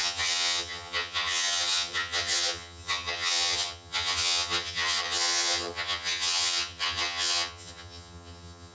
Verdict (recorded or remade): remade